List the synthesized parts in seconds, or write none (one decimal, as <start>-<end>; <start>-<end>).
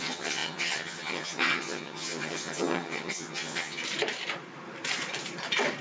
0.0-3.8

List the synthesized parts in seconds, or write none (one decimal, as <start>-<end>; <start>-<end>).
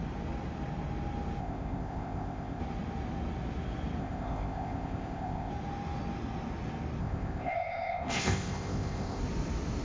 1.4-2.6; 4.0-5.5; 7.0-9.2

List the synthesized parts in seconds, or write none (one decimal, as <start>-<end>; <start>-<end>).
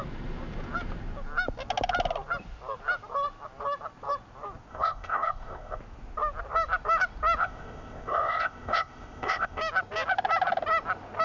4.7-5.8; 7.4-9.6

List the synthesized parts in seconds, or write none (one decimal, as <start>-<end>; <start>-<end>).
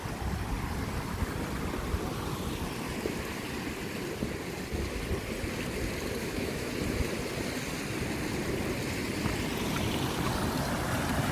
6.2-6.7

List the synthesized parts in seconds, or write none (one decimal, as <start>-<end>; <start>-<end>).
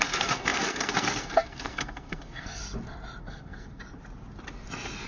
0.0-2.6; 3.2-3.8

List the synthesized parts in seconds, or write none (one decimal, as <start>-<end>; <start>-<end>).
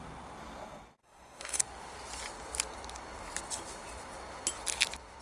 1.0-1.6